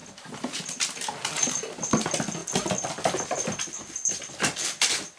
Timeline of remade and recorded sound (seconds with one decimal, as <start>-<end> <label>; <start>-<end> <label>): 0.0-2.4 recorded; 2.4-4.6 remade; 4.6-5.2 recorded